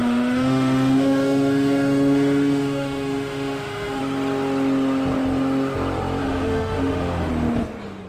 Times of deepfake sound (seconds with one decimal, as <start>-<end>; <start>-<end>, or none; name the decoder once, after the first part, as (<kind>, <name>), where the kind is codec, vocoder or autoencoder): 0.0-4.0 (autoencoder, DAC-VAE); 6.2-7.3